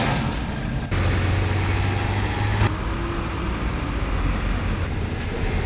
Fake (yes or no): no